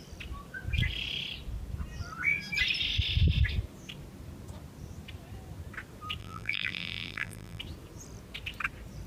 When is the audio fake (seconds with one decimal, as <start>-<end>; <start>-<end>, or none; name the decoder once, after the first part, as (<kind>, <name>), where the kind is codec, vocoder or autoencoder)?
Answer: 6.2-7.6 (vocoder, BigVGAN v2)